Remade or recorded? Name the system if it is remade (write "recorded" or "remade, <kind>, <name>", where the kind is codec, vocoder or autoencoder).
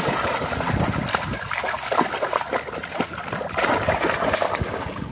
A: recorded